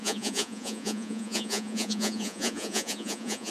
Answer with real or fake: fake